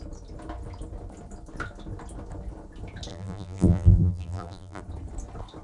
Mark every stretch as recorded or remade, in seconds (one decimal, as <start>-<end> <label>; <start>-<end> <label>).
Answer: 0.0-3.1 recorded; 3.1-4.8 remade; 4.8-5.6 recorded

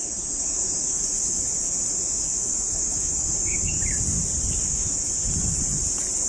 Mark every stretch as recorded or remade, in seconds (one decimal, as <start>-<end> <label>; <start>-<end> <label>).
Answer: 0.0-3.8 remade; 3.8-4.7 recorded; 4.7-5.3 remade; 5.3-6.3 recorded

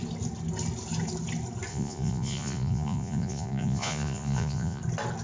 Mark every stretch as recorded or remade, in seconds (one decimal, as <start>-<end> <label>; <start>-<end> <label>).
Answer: 0.0-1.7 recorded; 1.7-4.8 remade; 4.8-5.2 recorded